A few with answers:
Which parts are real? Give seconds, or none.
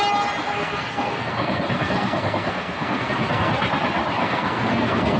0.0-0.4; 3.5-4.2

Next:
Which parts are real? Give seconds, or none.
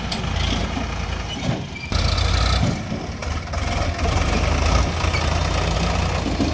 0.0-6.5